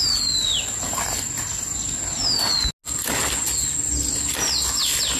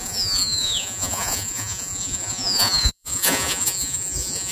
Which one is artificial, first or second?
second